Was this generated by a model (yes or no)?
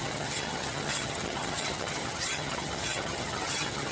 yes